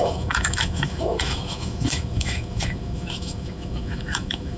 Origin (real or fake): fake